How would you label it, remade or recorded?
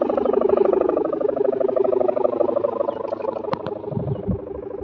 recorded